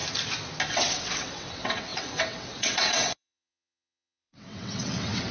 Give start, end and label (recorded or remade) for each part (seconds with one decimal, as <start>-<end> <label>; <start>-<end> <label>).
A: 0.0-0.7 recorded; 0.7-5.3 remade